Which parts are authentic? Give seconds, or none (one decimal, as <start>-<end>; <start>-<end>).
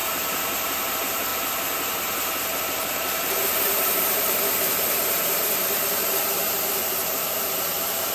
0.0-0.9; 1.3-2.6